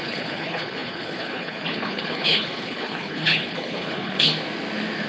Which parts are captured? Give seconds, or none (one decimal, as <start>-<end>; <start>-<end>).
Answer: 4.3-5.1